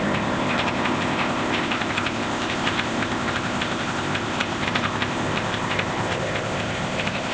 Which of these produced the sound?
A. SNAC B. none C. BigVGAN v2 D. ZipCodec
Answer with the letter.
D